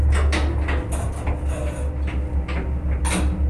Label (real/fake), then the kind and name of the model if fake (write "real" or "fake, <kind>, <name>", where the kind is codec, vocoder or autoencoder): real